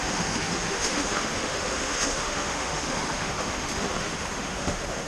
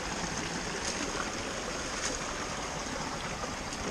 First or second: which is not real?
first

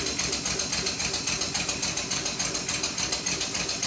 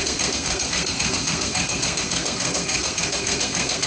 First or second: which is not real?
second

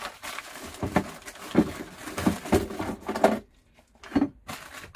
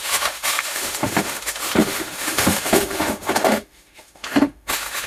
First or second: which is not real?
second